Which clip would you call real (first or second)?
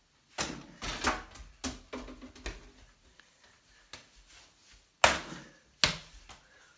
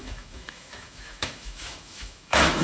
first